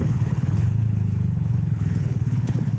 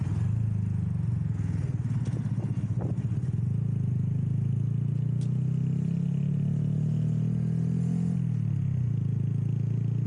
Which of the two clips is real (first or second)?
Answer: second